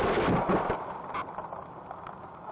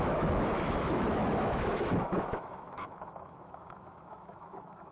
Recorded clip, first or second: first